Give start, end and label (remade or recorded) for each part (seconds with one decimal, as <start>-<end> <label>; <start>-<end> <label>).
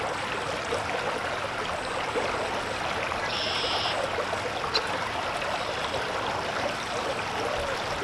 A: 0.0-8.0 recorded